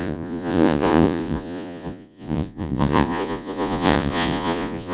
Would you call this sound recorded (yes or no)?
no